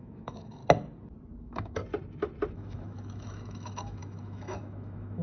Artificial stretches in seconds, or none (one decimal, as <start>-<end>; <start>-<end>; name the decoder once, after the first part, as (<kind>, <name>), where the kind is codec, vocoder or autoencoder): 0.0-0.6 (autoencoder, DAC-VAE); 1.4-1.8; 2.5-5.2